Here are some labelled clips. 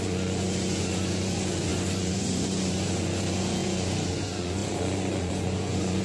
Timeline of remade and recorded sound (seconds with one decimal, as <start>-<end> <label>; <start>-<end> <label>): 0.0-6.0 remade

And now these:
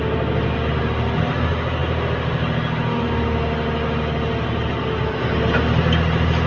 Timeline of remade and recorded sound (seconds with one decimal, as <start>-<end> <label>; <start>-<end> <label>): 0.0-6.5 recorded

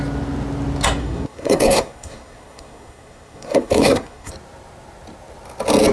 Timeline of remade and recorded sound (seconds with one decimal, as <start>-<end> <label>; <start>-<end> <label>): 0.0-1.0 recorded; 1.0-4.3 remade; 4.3-5.9 recorded

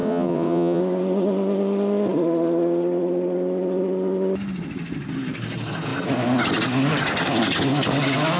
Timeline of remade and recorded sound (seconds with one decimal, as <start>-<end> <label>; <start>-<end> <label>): 0.0-0.8 remade; 0.8-8.4 recorded

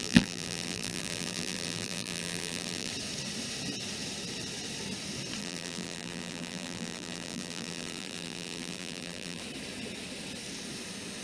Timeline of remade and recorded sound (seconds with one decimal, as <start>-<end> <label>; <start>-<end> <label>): 0.0-2.9 remade; 2.9-5.4 recorded; 5.4-9.4 remade; 9.4-11.2 recorded

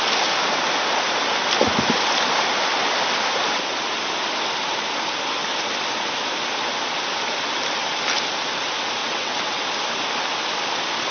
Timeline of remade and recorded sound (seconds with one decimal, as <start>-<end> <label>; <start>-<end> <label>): 0.0-9.0 recorded; 9.0-9.6 remade; 9.6-11.1 recorded

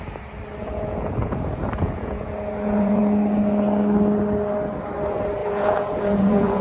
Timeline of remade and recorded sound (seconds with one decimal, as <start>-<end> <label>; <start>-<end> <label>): 0.0-0.6 recorded; 0.6-3.0 remade; 3.0-5.4 recorded; 5.4-6.6 remade

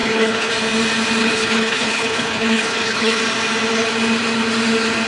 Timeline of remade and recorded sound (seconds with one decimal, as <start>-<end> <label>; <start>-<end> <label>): 0.0-0.5 remade; 0.5-1.2 recorded; 1.2-3.2 remade; 3.2-5.1 recorded